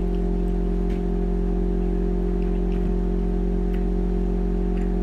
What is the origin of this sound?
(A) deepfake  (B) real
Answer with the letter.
B